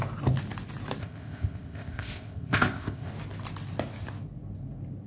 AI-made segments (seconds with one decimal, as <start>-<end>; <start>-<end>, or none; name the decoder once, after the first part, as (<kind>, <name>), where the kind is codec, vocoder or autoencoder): 1.0-3.1 (codec, ZipCodec)